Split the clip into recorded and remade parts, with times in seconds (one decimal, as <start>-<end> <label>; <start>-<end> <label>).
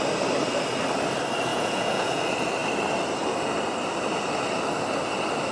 0.0-1.5 recorded; 1.5-2.2 remade; 2.2-5.5 recorded